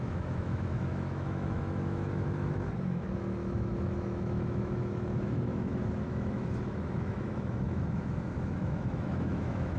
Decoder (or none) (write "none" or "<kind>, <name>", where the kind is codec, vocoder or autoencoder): autoencoder, DAC-VAE